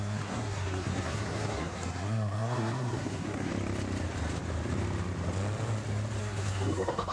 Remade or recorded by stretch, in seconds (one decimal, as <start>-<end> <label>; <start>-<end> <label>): 0.0-3.5 remade; 3.5-6.2 recorded; 6.2-7.1 remade